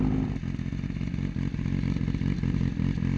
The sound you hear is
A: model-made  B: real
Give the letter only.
B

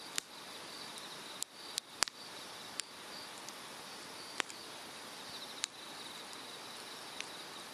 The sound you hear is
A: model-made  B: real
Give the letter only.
B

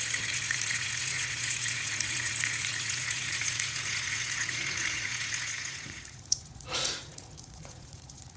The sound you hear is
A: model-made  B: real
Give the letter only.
A